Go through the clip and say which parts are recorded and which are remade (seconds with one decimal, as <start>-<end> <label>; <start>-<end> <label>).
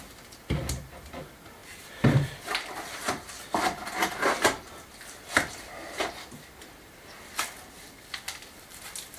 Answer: 0.0-9.2 recorded